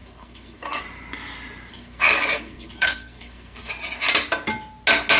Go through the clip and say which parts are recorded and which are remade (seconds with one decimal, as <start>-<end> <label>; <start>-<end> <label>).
0.0-0.8 remade; 0.8-1.7 recorded; 1.7-3.7 remade; 3.7-5.2 recorded